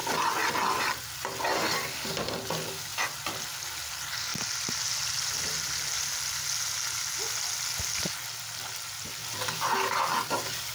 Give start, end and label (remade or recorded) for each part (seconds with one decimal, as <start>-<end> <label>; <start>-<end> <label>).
0.0-10.7 recorded